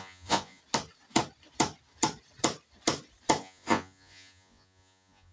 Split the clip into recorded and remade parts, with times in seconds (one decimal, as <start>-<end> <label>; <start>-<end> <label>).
0.0-0.6 remade; 0.6-3.4 recorded; 3.4-5.3 remade

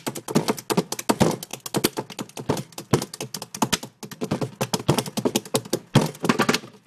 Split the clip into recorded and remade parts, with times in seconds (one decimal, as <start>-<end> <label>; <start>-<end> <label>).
0.0-6.9 recorded

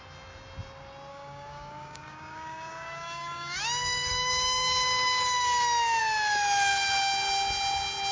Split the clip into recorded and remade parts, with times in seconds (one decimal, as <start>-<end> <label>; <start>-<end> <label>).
0.0-1.1 recorded; 1.1-6.0 remade; 6.0-8.1 recorded

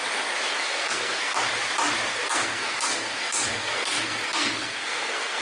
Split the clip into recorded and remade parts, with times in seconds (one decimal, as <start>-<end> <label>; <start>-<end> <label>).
0.0-0.5 recorded; 0.5-1.4 remade; 1.4-2.1 recorded; 2.1-5.4 remade

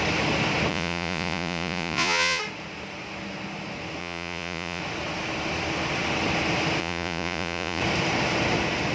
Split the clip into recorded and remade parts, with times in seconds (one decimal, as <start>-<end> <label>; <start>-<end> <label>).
0.0-0.7 recorded; 0.7-2.4 remade; 2.4-4.0 recorded; 4.0-4.8 remade; 4.8-6.8 recorded; 6.8-7.8 remade; 7.8-8.9 recorded